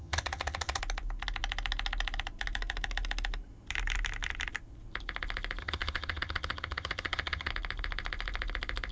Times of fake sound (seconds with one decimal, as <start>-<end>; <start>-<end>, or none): 0.0-0.8; 5.6-7.5